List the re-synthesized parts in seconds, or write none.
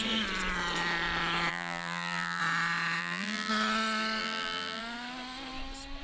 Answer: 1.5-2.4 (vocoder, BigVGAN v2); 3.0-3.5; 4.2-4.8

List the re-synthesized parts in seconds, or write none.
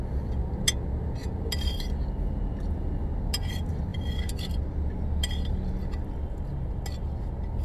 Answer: none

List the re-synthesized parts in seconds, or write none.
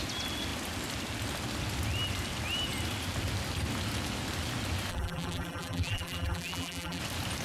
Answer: 4.9-7.0 (vocoder, BigVGAN v2)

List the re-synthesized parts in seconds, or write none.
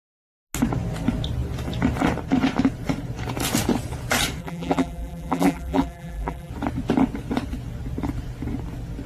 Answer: 4.4-6.5 (vocoder, BigVGAN v2)